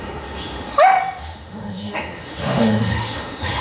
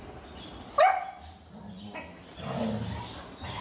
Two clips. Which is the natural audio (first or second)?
second